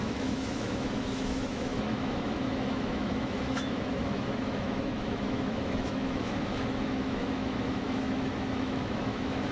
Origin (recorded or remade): remade